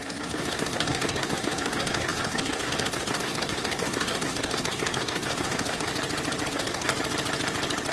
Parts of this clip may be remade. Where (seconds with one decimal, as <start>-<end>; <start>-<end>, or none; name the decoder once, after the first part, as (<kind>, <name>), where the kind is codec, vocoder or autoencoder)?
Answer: 0.0-5.9 (codec, SNAC); 6.5-6.9